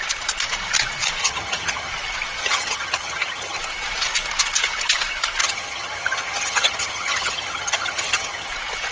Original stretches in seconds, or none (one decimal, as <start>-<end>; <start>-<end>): 0.0-1.2; 1.9-2.4; 3.6-5.4; 8.5-8.9